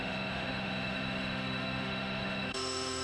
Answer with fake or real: fake